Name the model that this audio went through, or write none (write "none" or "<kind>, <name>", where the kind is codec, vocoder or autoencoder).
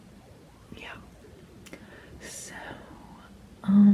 none